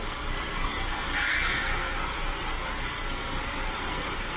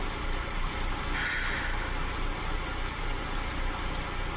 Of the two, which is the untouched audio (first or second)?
second